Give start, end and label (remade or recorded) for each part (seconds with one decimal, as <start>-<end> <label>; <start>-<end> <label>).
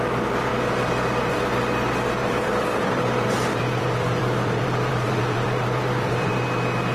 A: 0.0-2.2 recorded; 2.2-6.3 remade; 6.3-6.9 recorded